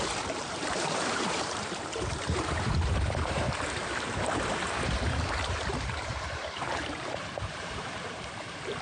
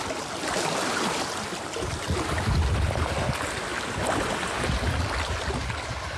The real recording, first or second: second